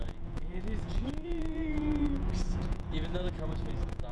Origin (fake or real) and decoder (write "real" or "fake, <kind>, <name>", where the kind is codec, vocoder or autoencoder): fake, vocoder, Vocos